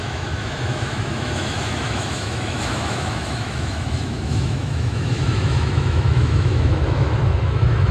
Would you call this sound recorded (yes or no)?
no